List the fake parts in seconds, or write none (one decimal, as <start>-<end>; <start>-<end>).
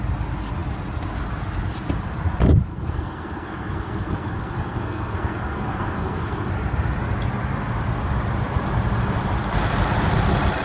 2.7-6.5